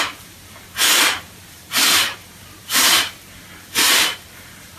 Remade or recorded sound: remade